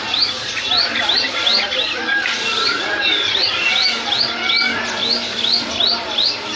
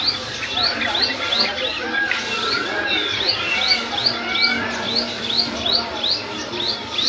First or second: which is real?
second